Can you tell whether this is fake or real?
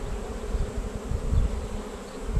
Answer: real